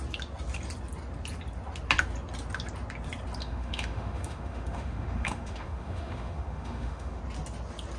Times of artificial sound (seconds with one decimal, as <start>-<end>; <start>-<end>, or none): 3.4-7.2